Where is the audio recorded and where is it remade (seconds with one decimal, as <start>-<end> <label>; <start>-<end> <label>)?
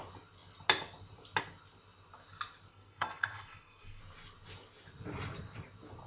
0.0-2.7 recorded; 2.7-4.0 remade; 4.0-6.1 recorded